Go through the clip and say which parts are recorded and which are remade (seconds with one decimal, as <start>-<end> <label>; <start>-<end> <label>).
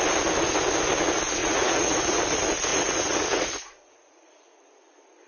0.0-1.4 recorded; 1.4-2.2 remade; 2.2-2.7 recorded; 2.7-4.7 remade; 4.7-5.3 recorded